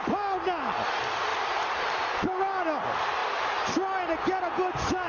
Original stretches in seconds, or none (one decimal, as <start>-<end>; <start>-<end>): 0.0-1.3; 2.4-5.1